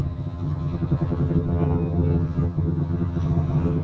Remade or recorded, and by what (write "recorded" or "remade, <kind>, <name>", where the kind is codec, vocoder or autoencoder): remade, vocoder, HiFi-GAN